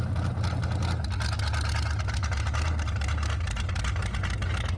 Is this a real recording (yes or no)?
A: yes